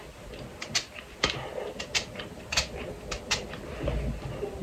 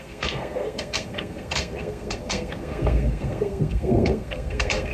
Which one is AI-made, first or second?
second